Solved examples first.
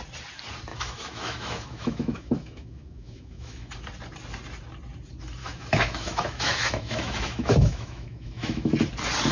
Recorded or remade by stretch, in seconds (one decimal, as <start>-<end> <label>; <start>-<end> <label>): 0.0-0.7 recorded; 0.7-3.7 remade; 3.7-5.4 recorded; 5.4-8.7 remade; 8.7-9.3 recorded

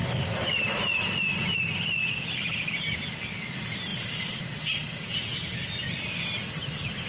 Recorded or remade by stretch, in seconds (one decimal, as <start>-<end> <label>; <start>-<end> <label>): 0.0-1.1 remade; 1.1-2.0 recorded; 2.0-2.7 remade; 2.7-3.9 recorded; 3.9-7.1 remade

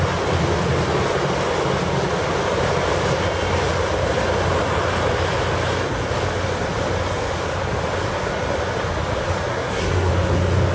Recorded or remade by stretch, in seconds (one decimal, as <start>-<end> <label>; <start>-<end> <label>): 0.0-9.5 recorded; 9.5-10.1 remade; 10.1-10.7 recorded

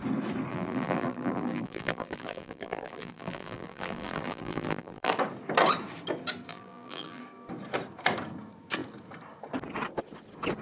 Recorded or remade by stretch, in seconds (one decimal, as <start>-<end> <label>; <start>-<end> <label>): 0.0-0.5 recorded; 0.5-5.1 remade; 5.1-6.5 recorded; 6.5-7.2 remade; 7.2-10.6 recorded

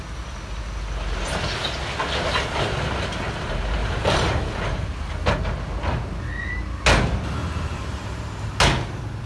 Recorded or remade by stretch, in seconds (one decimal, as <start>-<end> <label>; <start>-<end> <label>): 0.0-3.8 recorded; 3.8-4.6 remade; 4.6-7.4 recorded; 7.4-8.5 remade; 8.5-9.3 recorded

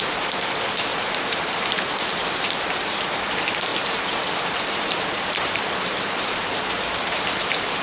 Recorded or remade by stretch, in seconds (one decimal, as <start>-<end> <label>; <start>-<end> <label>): 0.0-0.9 recorded; 0.9-1.8 remade; 1.8-3.7 recorded; 3.7-7.8 remade